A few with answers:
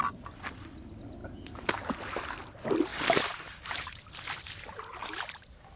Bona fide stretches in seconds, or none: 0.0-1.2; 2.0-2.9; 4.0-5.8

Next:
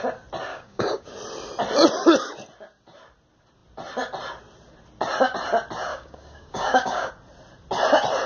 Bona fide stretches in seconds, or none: 0.0-0.5; 1.2-5.9; 7.1-8.3